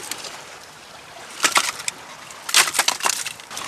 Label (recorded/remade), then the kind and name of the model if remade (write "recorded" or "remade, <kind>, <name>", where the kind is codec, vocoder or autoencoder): recorded